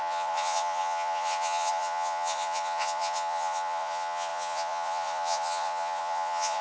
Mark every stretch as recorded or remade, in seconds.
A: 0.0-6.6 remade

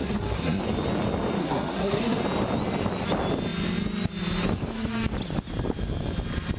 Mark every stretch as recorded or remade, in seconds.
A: 0.0-0.6 remade; 0.6-1.4 recorded; 1.4-2.2 remade; 2.2-6.6 recorded

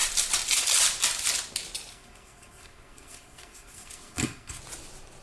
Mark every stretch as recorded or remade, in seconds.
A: 0.0-1.9 recorded; 1.9-4.6 remade; 4.6-5.2 recorded

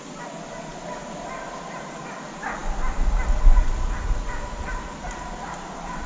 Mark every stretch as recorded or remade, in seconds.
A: 0.0-6.1 recorded

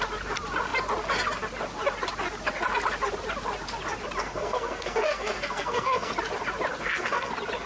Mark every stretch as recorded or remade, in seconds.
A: 0.0-4.2 recorded; 4.2-6.1 remade; 6.1-6.7 recorded; 6.7-7.3 remade; 7.3-7.7 recorded

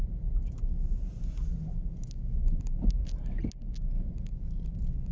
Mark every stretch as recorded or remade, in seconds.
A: 0.0-5.1 recorded

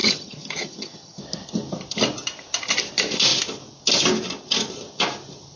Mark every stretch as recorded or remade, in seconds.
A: 0.0-1.2 remade; 1.2-5.6 recorded